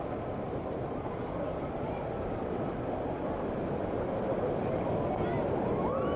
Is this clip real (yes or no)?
yes